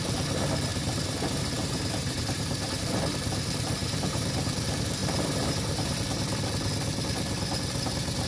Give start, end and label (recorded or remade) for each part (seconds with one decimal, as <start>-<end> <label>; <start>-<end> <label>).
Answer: 0.0-0.7 recorded; 0.7-2.8 remade; 2.8-3.8 recorded; 3.8-4.4 remade; 4.4-5.0 recorded; 5.0-6.0 remade; 6.0-8.3 recorded